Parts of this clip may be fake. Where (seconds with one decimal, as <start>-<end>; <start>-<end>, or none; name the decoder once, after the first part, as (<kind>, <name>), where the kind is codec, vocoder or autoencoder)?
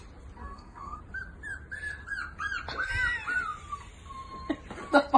0.4-1.0 (codec, SNAC)